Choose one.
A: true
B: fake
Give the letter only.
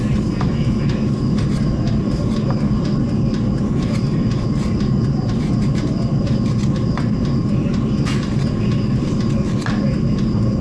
A